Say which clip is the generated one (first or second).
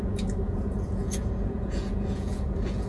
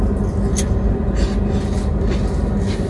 first